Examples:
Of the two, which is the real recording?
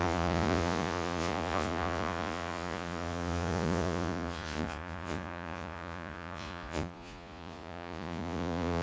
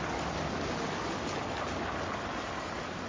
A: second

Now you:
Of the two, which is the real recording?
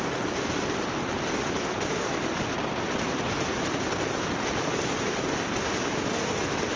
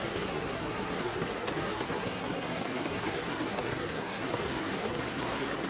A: first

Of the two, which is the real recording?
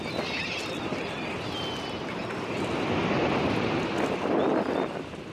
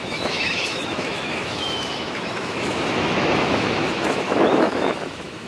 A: first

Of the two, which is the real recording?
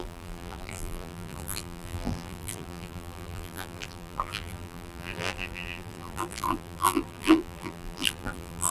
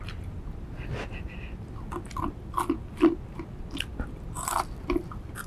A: second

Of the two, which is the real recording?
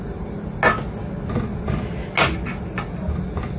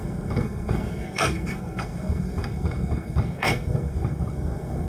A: first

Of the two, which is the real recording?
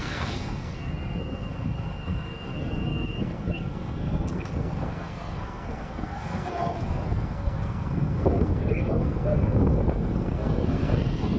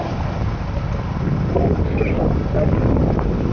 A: second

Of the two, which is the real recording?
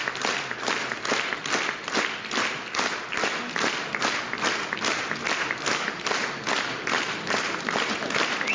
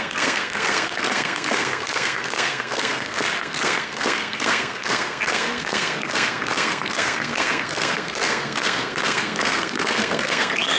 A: first